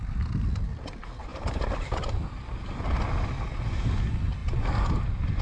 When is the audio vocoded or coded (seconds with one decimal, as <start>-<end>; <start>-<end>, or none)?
none